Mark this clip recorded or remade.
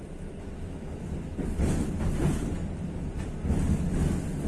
recorded